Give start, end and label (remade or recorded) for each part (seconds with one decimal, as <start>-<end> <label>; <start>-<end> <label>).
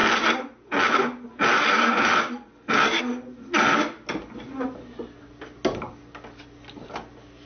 0.0-7.5 recorded